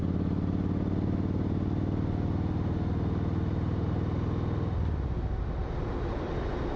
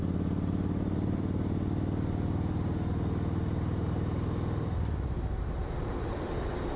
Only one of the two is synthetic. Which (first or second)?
second